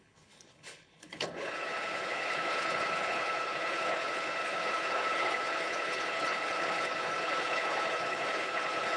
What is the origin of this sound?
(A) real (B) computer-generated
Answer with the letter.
B